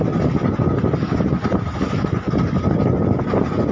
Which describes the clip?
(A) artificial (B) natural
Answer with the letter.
B